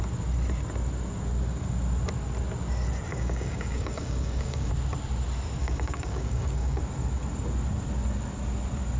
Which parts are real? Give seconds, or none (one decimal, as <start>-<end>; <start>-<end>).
0.0-3.1; 4.7-5.6; 6.8-9.0